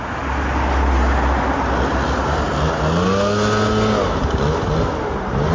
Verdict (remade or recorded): recorded